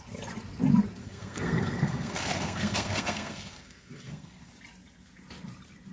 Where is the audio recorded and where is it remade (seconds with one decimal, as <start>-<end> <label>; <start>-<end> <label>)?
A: 0.0-1.0 recorded; 1.0-4.5 remade; 4.5-5.9 recorded